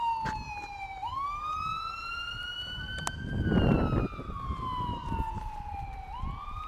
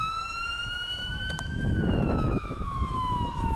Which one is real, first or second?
first